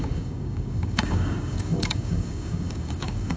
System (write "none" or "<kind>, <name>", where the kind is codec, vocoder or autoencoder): codec, DAC